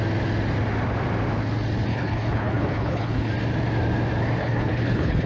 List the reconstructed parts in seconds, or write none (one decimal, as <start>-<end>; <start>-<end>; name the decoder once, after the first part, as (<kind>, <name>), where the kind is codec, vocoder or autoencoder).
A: 1.9-3.3 (codec, HILCodec); 4.4-5.3